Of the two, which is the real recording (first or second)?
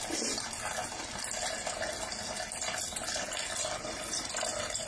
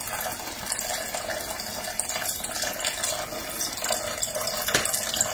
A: second